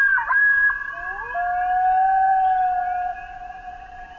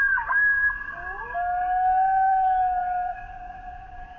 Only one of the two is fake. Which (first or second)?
second